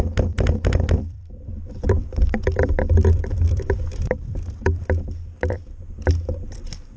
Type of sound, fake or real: fake